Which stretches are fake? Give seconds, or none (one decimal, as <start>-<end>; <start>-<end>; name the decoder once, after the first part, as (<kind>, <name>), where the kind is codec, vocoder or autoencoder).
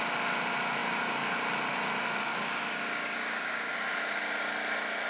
2.3-3.7 (codec, DAC)